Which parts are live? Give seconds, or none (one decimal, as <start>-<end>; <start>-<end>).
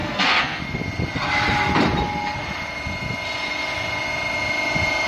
0.6-5.1